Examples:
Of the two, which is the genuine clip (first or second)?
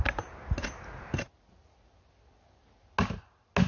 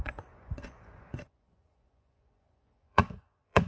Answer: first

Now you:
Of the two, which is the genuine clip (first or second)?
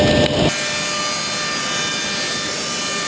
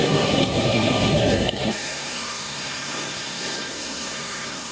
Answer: first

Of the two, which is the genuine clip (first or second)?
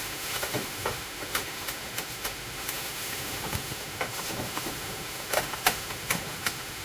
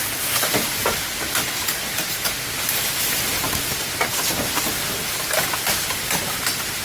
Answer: second